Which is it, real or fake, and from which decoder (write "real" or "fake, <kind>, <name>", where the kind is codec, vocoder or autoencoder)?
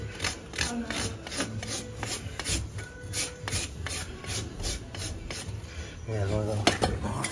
real